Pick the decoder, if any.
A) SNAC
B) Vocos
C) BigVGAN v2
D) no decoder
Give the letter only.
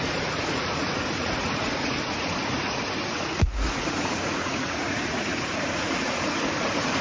B